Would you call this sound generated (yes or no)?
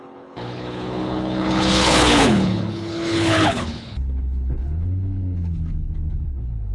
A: yes